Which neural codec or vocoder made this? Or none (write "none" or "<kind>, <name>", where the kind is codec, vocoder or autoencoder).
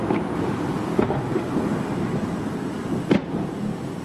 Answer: vocoder, BigVGAN v2